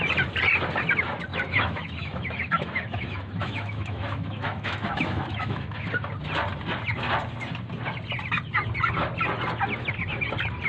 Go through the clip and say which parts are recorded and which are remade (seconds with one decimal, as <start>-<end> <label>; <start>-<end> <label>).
0.0-1.3 recorded; 1.3-5.9 remade; 5.9-10.7 recorded